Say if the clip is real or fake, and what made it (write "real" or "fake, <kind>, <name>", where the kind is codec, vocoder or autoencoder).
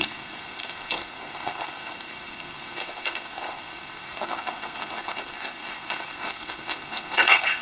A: fake, codec, SNAC